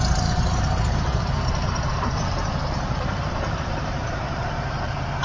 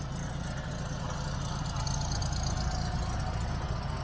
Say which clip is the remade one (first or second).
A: first